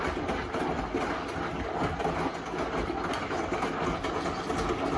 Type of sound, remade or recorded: recorded